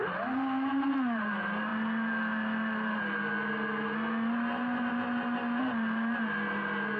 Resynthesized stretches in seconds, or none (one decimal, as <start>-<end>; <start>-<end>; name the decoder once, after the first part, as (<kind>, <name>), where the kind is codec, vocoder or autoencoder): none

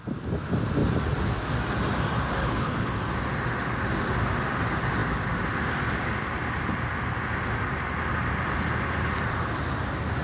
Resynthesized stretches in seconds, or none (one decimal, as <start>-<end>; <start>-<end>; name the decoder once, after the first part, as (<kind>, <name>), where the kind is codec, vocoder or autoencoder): 2.4-3.0 (codec, HILCodec)

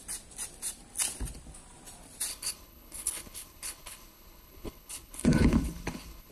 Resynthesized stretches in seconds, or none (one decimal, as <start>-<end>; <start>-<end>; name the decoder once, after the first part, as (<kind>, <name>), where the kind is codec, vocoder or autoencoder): 2.3-6.3 (codec, HILCodec)